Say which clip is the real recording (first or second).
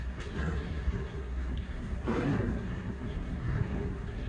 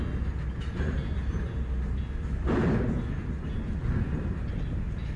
second